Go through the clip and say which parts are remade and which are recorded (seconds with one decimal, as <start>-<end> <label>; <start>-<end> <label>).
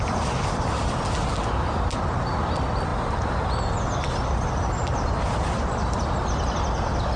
0.0-7.2 recorded